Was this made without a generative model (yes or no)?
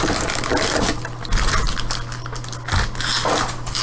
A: yes